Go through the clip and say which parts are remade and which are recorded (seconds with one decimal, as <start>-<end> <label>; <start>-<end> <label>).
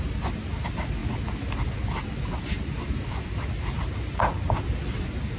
0.0-5.4 recorded